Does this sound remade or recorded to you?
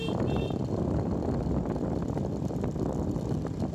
recorded